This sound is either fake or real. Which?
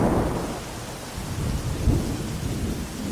real